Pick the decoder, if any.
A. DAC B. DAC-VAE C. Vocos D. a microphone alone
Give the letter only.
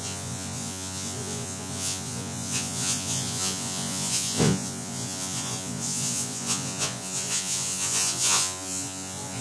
C